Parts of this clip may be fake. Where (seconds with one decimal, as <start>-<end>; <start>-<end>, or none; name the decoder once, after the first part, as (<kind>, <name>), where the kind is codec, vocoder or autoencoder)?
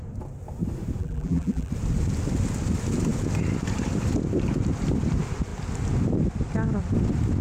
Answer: 1.0-1.7 (vocoder, BigVGAN v2)